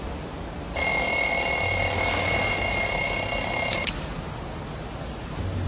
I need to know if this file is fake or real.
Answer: real